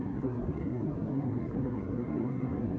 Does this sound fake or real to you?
fake